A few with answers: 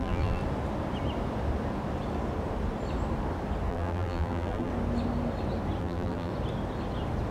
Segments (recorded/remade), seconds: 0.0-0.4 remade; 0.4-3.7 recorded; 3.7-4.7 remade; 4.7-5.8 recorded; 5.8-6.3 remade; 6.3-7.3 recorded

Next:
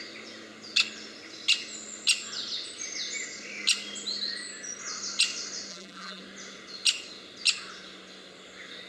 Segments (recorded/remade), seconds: 0.0-5.7 recorded; 5.7-6.2 remade; 6.2-8.9 recorded

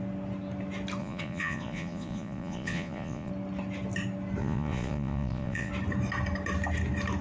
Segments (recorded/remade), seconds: 0.0-1.0 recorded; 1.0-3.3 remade; 3.3-4.4 recorded; 4.4-5.7 remade; 5.7-7.2 recorded

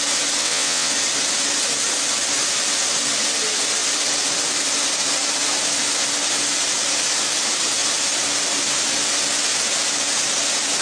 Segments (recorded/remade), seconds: 0.0-0.4 recorded; 0.4-0.9 remade; 0.9-10.8 recorded

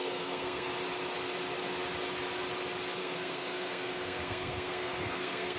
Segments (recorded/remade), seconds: 0.0-0.7 remade; 0.7-3.0 recorded; 3.0-5.6 remade